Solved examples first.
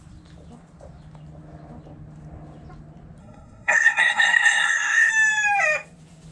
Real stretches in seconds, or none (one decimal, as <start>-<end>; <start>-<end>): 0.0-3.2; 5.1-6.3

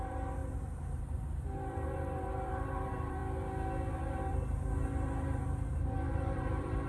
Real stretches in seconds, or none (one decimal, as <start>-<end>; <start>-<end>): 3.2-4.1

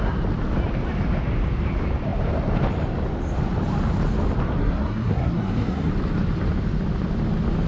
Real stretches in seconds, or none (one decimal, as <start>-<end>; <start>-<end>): 0.0-4.6; 5.9-7.7